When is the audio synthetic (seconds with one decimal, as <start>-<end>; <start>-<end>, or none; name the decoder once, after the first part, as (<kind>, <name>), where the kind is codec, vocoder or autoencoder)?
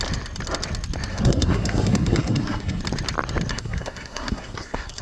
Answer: 1.1-2.8 (codec, SNAC); 3.5-5.0